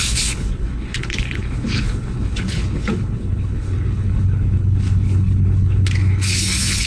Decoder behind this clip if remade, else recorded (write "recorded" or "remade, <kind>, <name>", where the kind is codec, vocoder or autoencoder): remade, codec, HILCodec